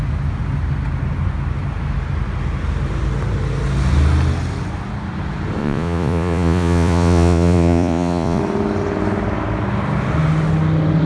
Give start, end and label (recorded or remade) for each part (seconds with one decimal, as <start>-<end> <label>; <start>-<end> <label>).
0.0-5.6 recorded; 5.6-8.4 remade; 8.4-11.1 recorded